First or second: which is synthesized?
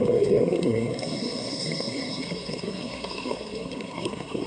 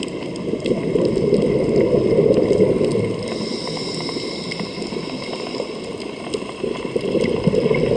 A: first